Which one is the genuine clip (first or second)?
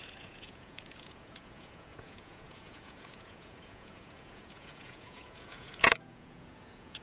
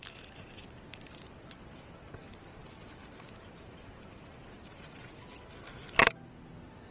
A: second